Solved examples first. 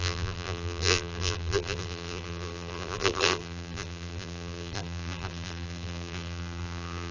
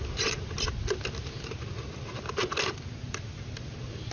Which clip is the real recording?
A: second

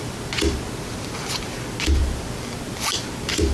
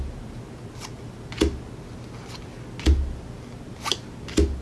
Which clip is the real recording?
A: second